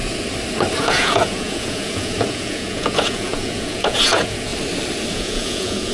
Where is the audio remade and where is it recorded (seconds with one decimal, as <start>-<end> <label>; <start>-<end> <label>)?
0.0-0.8 recorded; 0.8-4.5 remade; 4.5-5.1 recorded; 5.1-5.9 remade